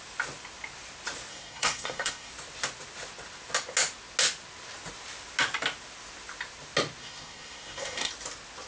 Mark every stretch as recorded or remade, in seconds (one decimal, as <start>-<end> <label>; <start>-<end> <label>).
0.0-1.3 recorded; 1.3-2.3 remade; 2.3-7.0 recorded; 7.0-8.1 remade; 8.1-8.7 recorded